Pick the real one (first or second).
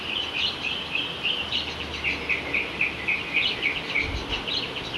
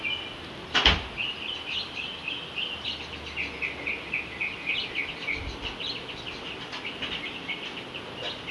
second